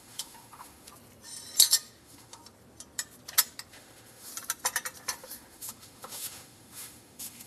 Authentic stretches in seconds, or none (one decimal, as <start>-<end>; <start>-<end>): 0.9-2.0; 2.4-3.7; 4.3-5.2